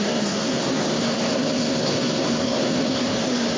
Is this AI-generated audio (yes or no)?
yes